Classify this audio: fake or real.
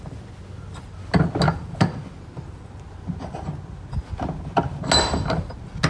real